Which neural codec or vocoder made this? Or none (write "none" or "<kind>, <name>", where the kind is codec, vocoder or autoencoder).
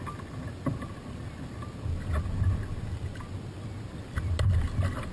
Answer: none